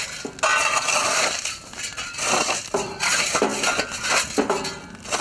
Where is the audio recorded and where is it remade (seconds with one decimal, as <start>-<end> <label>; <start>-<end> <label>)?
0.0-0.5 recorded; 0.5-3.1 remade; 3.1-5.2 recorded